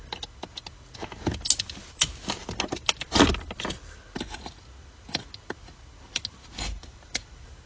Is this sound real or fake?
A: real